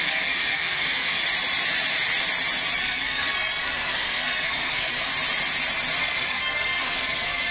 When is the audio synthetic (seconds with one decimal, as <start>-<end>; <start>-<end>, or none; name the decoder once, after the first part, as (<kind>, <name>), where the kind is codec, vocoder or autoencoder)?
0.0-1.2 (codec, SNAC); 2.8-5.1; 6.0-7.5